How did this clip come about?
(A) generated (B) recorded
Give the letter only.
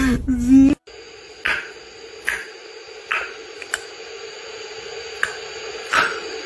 B